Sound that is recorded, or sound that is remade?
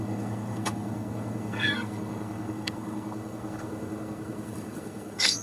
remade